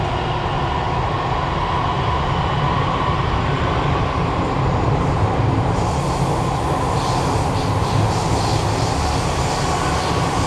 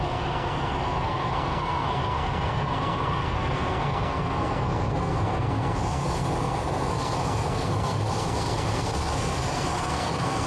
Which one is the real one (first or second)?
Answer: first